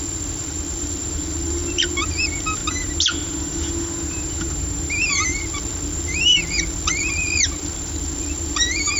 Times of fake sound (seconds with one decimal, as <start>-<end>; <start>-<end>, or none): 0.0-2.6; 5.1-9.0